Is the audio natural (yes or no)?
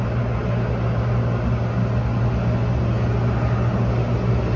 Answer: yes